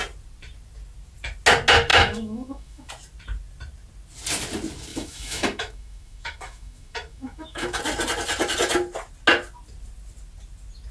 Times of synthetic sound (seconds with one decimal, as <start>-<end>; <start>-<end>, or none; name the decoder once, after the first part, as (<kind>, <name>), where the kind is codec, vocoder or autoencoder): 1.9-2.9 (autoencoder, DAC-VAE); 4.9-7.8